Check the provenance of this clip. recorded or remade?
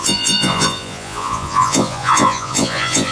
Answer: remade